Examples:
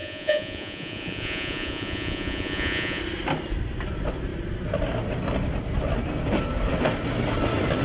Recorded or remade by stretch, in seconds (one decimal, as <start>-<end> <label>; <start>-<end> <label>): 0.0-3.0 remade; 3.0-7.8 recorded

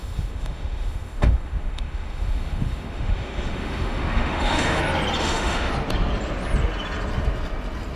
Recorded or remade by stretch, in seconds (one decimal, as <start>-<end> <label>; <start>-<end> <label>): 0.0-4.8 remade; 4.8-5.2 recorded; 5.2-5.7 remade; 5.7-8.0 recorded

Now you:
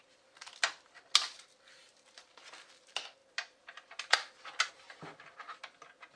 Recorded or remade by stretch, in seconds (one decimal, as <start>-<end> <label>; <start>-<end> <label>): 0.0-6.2 recorded